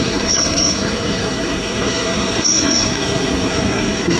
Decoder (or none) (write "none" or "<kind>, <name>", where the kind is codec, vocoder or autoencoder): codec, SNAC